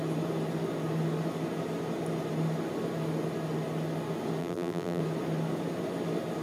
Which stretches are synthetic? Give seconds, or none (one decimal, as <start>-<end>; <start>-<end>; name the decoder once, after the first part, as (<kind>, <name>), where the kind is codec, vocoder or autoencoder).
4.4-5.0 (vocoder, BigVGAN v2)